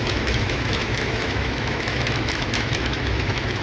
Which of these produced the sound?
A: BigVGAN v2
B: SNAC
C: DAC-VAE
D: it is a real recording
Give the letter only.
C